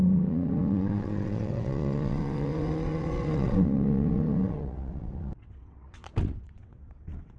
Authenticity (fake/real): fake